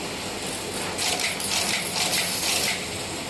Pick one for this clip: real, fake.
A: real